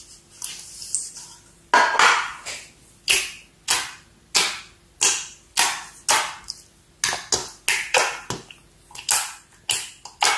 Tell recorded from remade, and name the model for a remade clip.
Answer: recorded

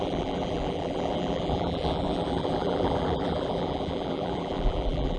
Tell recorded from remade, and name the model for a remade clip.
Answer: remade, vocoder, BigVGAN v2